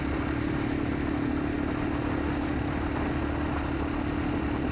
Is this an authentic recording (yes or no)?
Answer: yes